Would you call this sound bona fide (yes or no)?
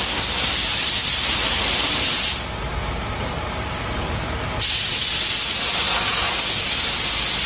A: yes